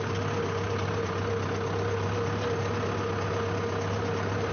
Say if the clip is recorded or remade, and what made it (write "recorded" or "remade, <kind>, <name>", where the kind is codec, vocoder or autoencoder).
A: recorded